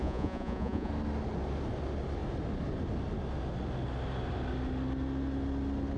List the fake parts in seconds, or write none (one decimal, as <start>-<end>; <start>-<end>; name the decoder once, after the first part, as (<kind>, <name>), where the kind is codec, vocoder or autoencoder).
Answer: 0.0-0.9 (vocoder, Vocos)